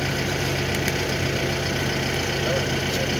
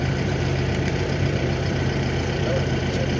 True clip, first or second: first